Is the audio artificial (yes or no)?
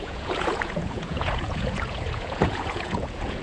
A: yes